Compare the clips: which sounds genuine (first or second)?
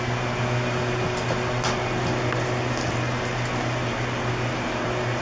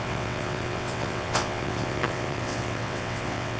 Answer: first